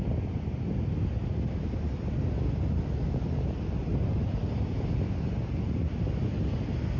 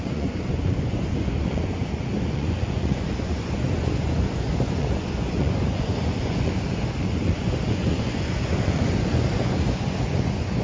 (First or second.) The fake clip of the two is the second